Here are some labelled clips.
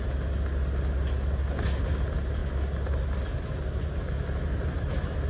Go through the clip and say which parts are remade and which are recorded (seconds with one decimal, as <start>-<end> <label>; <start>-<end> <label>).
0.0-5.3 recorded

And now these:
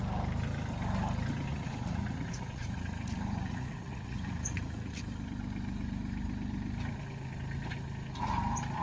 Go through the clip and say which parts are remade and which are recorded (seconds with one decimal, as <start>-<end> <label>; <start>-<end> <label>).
0.0-1.5 recorded; 1.5-5.0 remade; 5.0-8.8 recorded

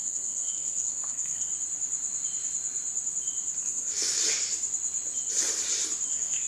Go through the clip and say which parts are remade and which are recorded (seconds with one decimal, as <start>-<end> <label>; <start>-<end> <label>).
0.0-1.5 remade; 1.5-3.6 recorded; 3.6-4.2 remade; 4.2-6.1 recorded; 6.1-6.5 remade

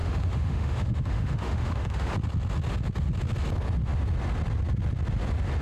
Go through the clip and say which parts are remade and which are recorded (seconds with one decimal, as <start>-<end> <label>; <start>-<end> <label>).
0.0-2.1 remade; 2.1-5.6 recorded

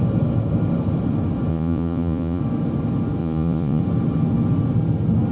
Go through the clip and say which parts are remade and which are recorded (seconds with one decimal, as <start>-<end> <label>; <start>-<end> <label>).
0.0-1.5 recorded; 1.5-2.4 remade; 2.4-3.2 recorded; 3.2-3.8 remade; 3.8-5.3 recorded

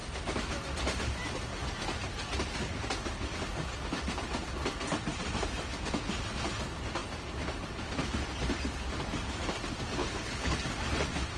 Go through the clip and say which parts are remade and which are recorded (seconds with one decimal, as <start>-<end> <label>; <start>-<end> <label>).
0.0-10.0 recorded; 10.0-10.6 remade; 10.6-11.4 recorded

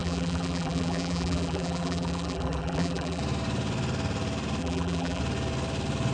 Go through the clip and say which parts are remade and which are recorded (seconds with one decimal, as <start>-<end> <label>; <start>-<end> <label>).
0.0-3.2 remade; 3.2-4.6 recorded; 4.6-5.2 remade; 5.2-6.1 recorded

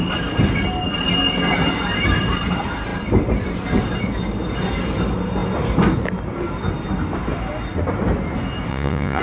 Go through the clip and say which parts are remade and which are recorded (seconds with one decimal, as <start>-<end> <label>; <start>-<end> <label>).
0.0-8.7 recorded; 8.7-9.2 remade